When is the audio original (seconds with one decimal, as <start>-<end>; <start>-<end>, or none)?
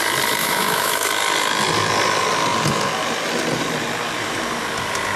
0.0-0.4; 1.1-5.2